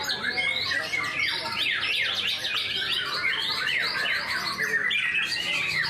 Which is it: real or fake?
real